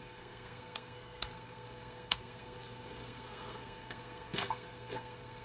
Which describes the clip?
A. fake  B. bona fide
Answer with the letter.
A